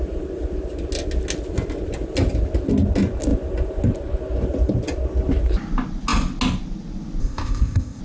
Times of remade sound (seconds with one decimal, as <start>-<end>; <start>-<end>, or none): 7.2-8.0